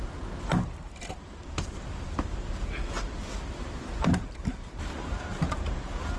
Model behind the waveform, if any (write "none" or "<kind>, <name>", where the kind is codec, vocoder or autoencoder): none